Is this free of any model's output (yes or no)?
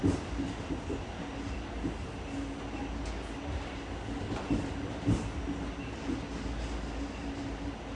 yes